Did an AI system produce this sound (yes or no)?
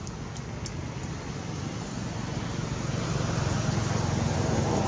no